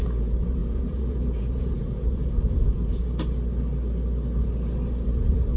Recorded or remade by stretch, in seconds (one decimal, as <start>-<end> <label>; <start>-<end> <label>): 0.0-3.0 remade; 3.0-5.6 recorded